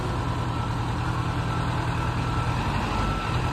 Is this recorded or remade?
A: recorded